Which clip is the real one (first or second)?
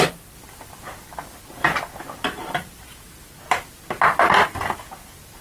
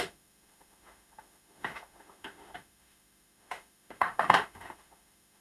first